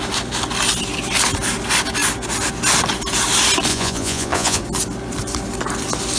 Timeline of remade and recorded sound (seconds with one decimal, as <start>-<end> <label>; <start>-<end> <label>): 0.0-3.7 recorded; 3.7-4.6 remade; 4.6-6.2 recorded